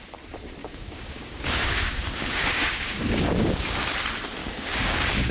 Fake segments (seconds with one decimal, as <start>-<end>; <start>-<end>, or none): 0.6-3.8; 4.4-5.3